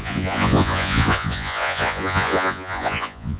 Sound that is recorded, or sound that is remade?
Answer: remade